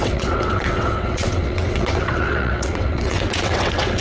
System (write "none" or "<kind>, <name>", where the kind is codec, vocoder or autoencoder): vocoder, WaveNeXt